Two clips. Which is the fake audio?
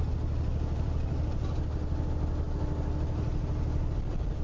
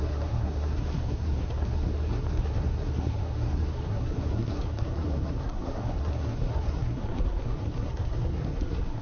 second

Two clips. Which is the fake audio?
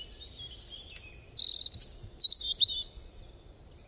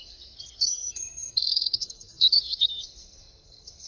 second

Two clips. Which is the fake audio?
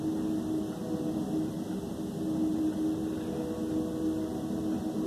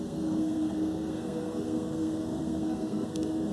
second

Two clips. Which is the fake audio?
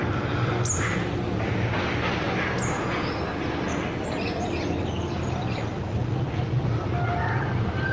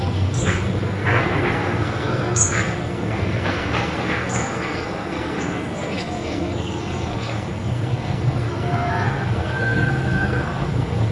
second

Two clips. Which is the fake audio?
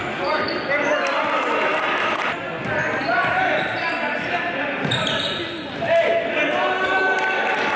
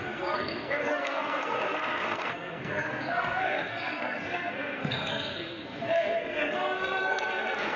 second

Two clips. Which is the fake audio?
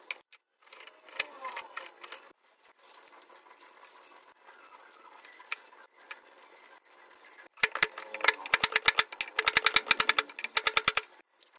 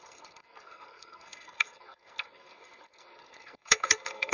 second